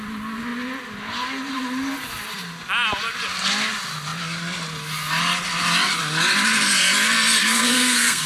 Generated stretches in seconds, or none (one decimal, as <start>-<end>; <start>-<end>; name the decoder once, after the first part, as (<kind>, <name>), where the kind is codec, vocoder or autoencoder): 7.4-8.3 (codec, SNAC)